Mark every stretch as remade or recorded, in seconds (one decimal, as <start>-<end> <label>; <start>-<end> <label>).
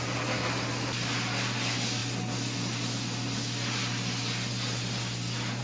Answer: 0.0-5.6 recorded